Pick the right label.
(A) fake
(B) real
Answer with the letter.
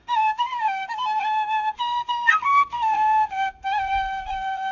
A